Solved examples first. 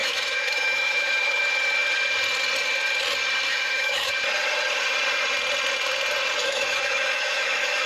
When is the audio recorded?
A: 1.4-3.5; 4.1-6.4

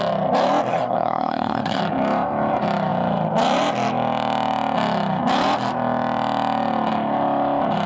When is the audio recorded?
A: 0.0-0.7; 1.8-7.9

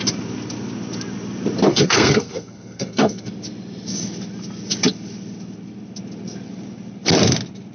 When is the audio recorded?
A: 0.0-1.7; 3.3-7.7

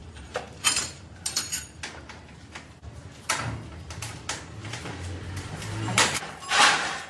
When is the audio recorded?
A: 2.2-4.6

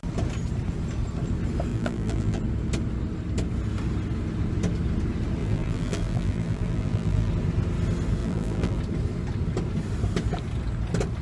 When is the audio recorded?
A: 0.0-1.7; 2.4-5.4; 7.3-8.2; 8.8-11.2